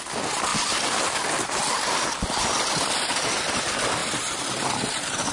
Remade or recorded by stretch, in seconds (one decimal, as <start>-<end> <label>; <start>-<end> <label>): 0.0-5.3 recorded